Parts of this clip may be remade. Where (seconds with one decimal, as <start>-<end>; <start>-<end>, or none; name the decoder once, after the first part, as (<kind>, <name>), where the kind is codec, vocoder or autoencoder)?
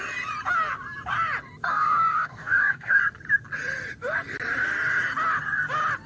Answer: 1.7-3.0 (codec, DAC)